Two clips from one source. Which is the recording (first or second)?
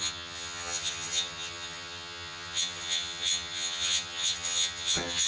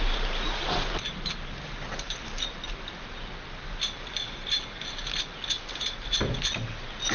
second